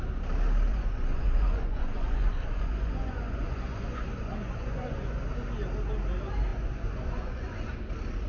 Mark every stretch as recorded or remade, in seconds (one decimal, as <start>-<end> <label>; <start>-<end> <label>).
0.0-0.7 recorded; 0.7-5.3 remade; 5.3-6.5 recorded; 6.5-7.8 remade; 7.8-8.3 recorded